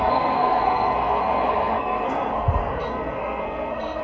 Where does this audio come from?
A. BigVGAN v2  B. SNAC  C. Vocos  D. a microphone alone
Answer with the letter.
B